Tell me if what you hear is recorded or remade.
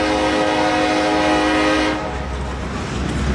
recorded